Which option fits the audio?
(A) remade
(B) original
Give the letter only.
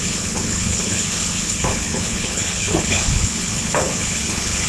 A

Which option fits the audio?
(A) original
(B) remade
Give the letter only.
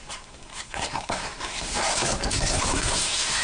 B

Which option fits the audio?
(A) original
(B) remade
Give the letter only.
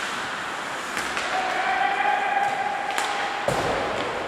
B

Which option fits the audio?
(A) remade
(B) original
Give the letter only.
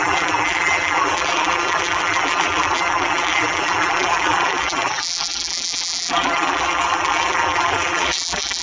A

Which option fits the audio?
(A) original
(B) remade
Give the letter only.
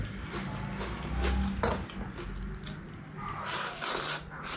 A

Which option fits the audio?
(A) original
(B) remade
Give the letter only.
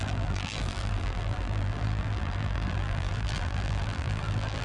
B